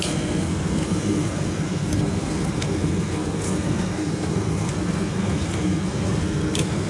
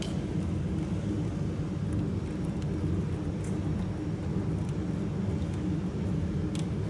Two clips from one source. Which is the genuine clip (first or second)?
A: second